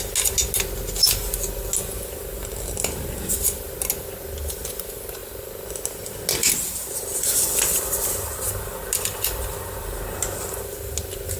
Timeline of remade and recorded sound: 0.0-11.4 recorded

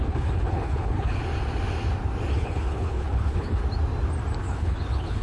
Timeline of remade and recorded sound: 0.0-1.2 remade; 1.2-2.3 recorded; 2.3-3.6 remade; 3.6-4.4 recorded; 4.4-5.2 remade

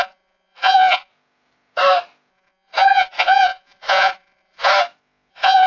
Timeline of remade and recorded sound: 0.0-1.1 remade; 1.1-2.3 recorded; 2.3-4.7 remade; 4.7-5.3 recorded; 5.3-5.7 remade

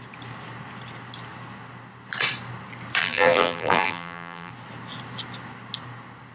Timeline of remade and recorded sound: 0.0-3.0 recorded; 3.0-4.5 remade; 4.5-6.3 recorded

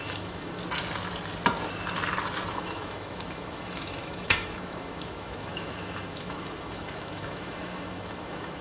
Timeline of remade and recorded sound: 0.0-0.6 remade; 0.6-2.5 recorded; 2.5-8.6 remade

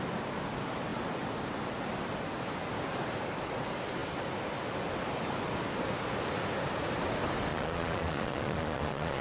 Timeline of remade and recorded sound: 0.0-7.5 recorded; 7.5-9.2 remade